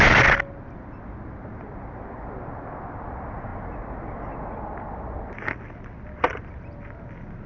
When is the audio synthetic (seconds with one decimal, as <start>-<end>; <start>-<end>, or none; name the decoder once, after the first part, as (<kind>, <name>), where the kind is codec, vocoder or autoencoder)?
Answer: none